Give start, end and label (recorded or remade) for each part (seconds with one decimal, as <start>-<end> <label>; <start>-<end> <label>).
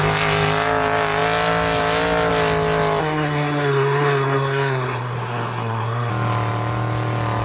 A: 0.0-3.0 recorded; 3.0-6.1 remade; 6.1-7.4 recorded